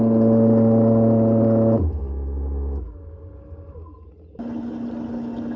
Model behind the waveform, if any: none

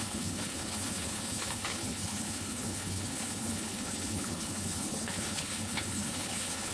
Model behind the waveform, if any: codec, HILCodec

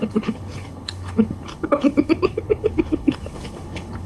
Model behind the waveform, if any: codec, HILCodec